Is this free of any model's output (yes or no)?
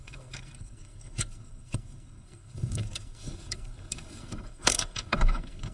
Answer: no